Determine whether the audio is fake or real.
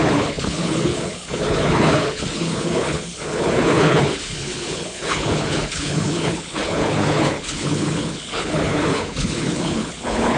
fake